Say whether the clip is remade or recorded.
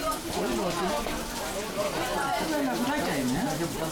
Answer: recorded